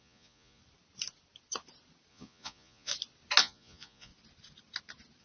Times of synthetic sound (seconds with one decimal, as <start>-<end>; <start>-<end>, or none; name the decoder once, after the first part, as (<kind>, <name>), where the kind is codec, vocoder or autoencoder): 0.0-0.6 (vocoder, Vocos); 2.1-2.9; 3.4-4.1

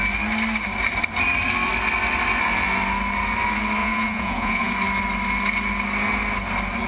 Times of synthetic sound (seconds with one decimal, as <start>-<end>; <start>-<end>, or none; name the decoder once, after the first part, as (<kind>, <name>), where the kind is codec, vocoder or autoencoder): 3.8-4.7 (vocoder, Vocos)

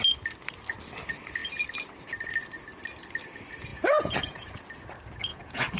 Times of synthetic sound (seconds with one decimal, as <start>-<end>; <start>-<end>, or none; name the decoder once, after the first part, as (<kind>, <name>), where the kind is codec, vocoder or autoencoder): 3.7-4.6 (vocoder, Vocos); 5.3-5.8

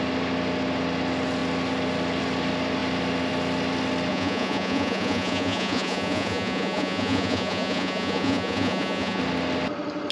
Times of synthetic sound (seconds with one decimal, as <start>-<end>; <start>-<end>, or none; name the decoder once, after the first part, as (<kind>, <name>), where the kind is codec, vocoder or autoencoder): 4.1-9.2 (vocoder, Vocos)

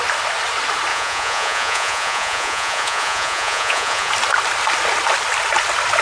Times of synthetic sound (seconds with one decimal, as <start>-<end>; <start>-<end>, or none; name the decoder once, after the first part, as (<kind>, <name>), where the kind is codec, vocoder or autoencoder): 0.9-4.1 (vocoder, Vocos)

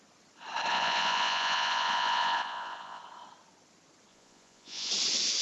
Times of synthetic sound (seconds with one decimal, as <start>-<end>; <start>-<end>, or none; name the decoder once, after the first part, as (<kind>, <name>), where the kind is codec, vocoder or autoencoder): 0.7-3.0 (vocoder, Vocos); 4.1-4.9

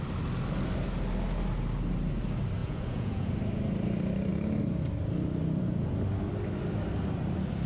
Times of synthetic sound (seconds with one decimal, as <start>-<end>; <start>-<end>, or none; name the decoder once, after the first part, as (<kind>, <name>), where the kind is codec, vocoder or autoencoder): 2.6-3.3 (vocoder, Vocos)

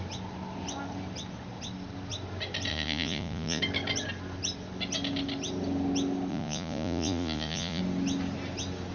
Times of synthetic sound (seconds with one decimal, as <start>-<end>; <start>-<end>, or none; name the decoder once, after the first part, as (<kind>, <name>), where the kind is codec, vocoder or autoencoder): 2.7-3.6 (vocoder, Vocos); 6.3-7.8